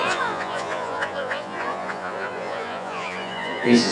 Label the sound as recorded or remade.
remade